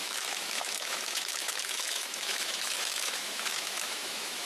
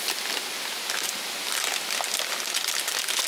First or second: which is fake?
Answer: first